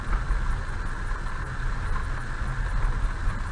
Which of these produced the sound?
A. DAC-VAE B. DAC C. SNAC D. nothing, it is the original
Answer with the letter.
D